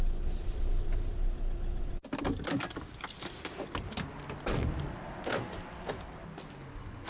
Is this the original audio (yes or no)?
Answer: yes